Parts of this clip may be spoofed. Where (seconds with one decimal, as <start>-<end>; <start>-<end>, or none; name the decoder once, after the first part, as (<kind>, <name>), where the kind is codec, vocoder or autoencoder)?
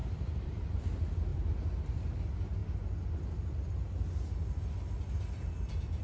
0.0-0.8 (vocoder, BigVGAN v2); 1.3-1.8